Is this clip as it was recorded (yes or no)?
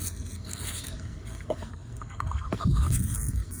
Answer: no